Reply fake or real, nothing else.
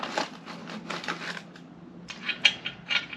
real